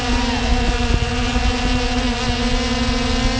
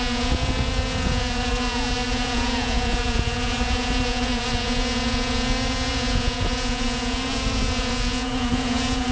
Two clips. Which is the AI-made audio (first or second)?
second